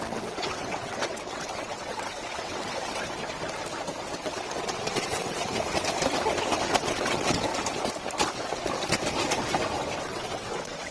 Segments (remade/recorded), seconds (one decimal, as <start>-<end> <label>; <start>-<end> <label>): 0.0-3.2 remade; 3.2-4.0 recorded; 4.0-5.5 remade; 5.5-6.8 recorded; 6.8-7.5 remade; 7.5-10.0 recorded; 10.0-10.9 remade